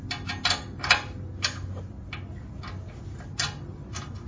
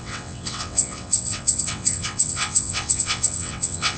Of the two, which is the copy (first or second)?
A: second